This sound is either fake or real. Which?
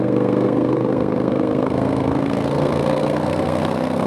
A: fake